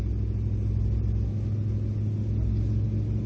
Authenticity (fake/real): real